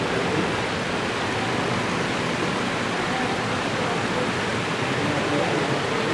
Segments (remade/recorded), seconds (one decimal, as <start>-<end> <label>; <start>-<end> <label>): 0.0-6.1 recorded